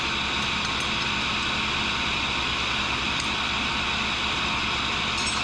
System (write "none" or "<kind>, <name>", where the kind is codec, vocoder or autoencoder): none